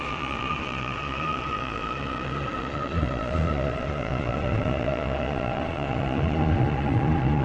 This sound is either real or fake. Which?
fake